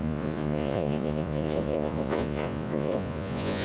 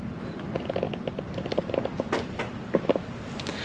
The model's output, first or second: first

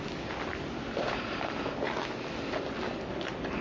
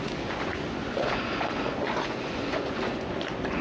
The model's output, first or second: second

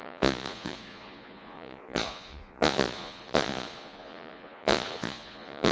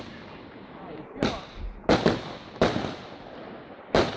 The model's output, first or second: first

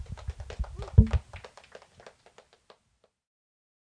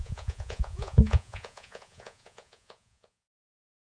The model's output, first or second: second